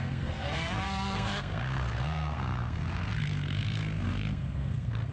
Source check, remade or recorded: remade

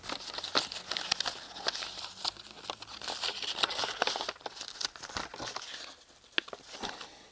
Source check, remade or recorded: recorded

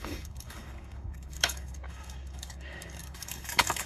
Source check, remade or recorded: remade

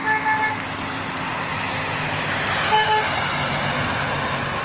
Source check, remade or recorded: recorded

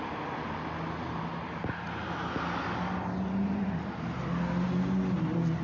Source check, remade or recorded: recorded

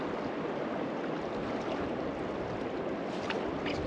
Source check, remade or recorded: recorded